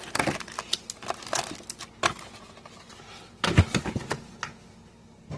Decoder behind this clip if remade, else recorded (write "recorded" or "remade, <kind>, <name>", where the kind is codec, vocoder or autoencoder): recorded